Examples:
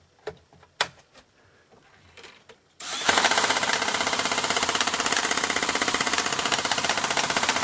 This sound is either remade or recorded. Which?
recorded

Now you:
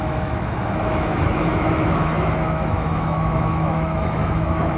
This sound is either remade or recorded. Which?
remade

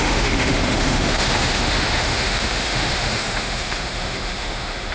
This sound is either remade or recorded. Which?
remade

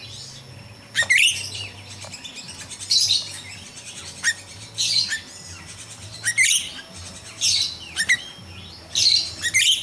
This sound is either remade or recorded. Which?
recorded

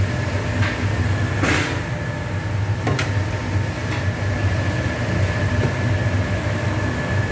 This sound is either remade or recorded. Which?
recorded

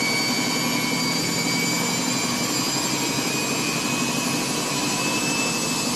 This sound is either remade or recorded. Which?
recorded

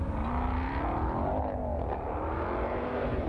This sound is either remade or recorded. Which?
recorded